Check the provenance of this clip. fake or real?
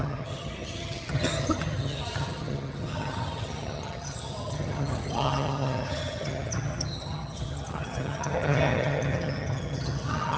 fake